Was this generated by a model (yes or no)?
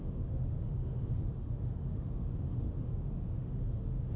yes